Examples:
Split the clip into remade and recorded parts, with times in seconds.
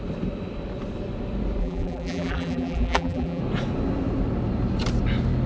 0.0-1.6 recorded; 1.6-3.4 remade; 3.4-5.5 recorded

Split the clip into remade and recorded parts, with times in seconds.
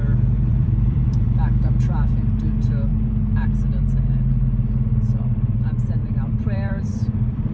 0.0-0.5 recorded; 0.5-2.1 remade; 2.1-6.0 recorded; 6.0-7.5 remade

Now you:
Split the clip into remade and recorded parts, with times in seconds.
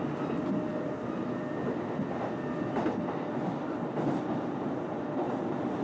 0.0-5.8 recorded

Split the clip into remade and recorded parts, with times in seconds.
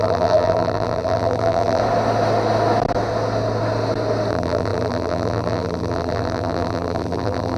0.0-1.8 remade; 1.8-4.3 recorded; 4.3-7.6 remade